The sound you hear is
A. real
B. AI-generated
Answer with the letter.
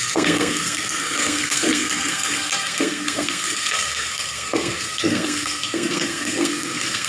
B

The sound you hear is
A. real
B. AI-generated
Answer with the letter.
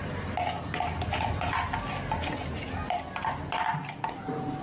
A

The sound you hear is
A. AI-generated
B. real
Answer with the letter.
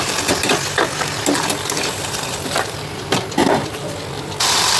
A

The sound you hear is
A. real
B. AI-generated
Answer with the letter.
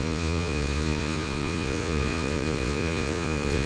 B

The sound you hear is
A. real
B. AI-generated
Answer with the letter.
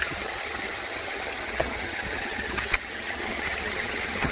B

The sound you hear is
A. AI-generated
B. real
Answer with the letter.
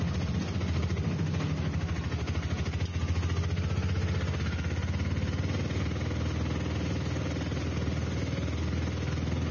B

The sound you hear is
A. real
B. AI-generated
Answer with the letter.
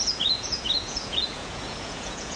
B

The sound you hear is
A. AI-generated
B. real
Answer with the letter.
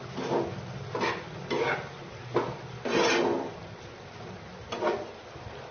B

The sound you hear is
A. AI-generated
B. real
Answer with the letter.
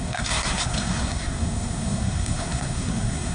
A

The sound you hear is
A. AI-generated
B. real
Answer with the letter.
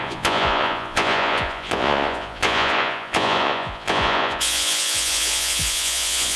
A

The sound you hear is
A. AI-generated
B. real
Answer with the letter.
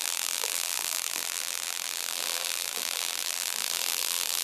A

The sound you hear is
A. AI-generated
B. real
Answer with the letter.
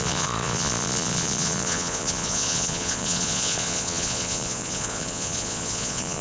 A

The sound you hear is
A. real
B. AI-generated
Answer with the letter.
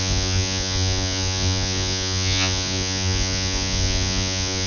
B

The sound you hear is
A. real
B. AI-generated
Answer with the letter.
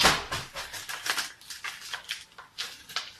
A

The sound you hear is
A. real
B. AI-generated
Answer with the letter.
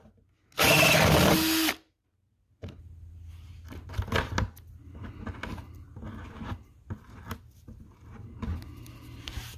A